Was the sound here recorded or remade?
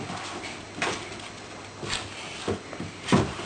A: recorded